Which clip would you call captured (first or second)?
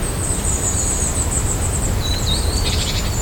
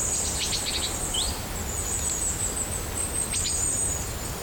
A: second